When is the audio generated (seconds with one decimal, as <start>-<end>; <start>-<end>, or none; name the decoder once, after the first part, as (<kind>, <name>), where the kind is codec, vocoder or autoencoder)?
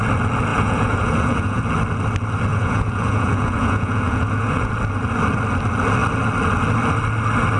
0.5-1.6 (vocoder, Vocos); 2.5-4.7